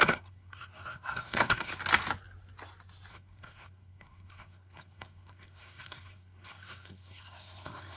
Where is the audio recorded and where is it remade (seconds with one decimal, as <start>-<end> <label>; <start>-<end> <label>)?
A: 0.0-1.7 remade; 1.7-3.1 recorded; 3.1-8.0 remade